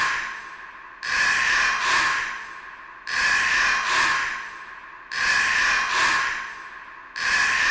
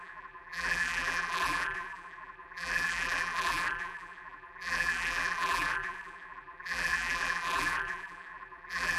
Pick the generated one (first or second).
second